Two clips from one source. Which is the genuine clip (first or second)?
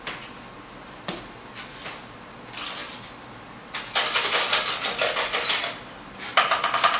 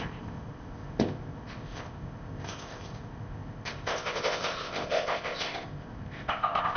first